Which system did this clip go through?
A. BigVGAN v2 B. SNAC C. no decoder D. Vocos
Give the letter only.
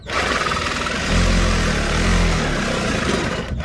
C